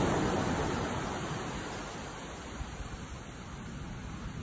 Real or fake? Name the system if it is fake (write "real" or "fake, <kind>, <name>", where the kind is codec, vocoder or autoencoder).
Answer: real